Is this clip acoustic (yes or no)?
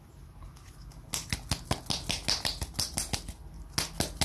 yes